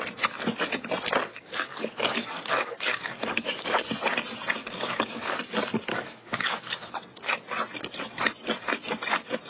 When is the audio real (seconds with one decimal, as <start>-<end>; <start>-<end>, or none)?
0.0-1.3; 3.9-4.6; 5.4-5.9; 6.9-9.5